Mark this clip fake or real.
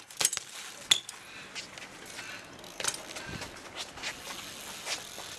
real